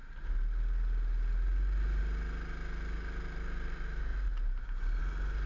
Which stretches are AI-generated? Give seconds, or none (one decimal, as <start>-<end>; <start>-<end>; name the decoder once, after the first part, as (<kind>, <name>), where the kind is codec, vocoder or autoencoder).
none